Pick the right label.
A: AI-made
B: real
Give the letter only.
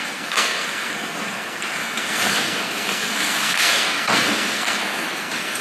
A